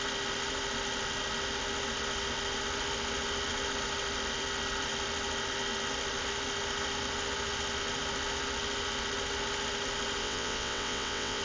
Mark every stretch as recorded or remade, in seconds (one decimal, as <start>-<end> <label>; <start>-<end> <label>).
0.0-10.2 recorded; 10.2-11.4 remade